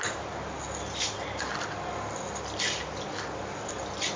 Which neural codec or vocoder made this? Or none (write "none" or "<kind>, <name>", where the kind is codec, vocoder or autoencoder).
none